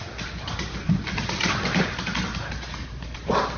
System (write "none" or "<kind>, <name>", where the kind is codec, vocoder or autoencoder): none